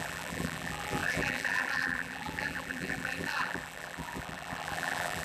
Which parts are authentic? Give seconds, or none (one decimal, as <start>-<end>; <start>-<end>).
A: none